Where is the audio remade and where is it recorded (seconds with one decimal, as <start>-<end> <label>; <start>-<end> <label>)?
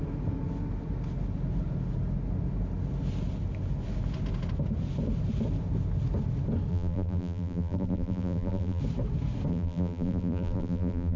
0.0-6.7 recorded; 6.7-8.8 remade; 8.8-9.5 recorded; 9.5-11.2 remade